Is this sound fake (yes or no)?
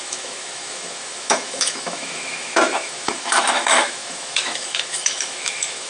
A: yes